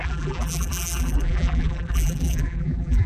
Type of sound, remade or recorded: remade